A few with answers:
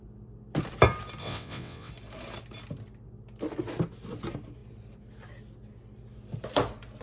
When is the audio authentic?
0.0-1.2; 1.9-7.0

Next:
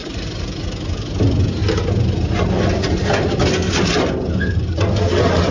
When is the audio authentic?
0.6-5.5

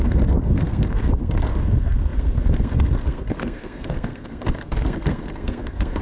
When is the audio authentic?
none